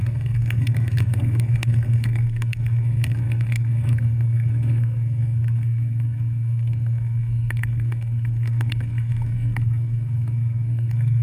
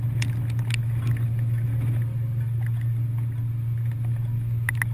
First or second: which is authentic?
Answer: second